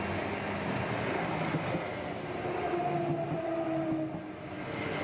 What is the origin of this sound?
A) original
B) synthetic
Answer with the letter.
A